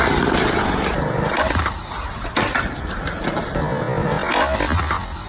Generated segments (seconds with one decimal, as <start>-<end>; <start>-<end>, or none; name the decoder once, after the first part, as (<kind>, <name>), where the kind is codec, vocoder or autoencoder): none